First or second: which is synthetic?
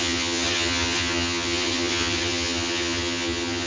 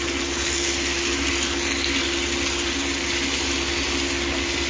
first